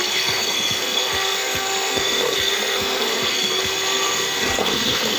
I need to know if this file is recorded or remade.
remade